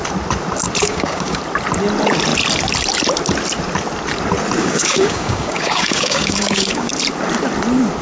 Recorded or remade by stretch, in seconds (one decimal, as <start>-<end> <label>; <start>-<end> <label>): 0.0-0.8 recorded; 0.8-1.4 remade; 1.4-4.6 recorded; 4.6-6.9 remade; 6.9-8.0 recorded